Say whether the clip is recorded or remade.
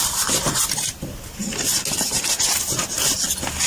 recorded